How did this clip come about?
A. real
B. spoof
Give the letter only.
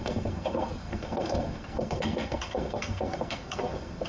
B